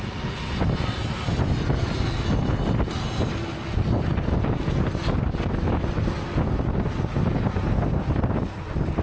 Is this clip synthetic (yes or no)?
no